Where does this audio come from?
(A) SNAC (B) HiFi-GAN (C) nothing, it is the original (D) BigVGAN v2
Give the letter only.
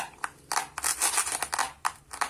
C